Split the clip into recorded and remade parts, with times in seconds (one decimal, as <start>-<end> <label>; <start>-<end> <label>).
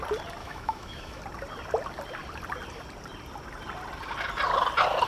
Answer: 0.0-0.4 recorded; 0.4-1.2 remade; 1.2-5.1 recorded